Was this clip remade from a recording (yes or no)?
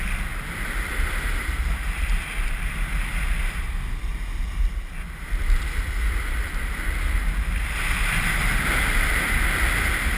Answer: no